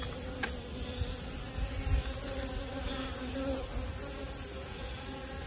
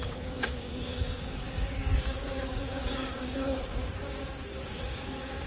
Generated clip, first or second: second